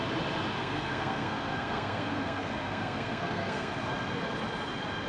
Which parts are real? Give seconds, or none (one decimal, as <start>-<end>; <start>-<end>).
0.0-0.6; 3.7-5.1